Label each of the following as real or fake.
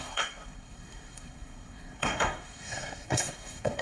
fake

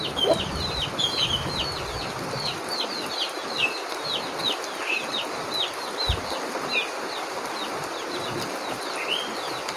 real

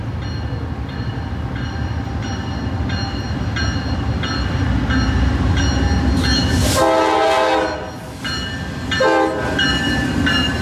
real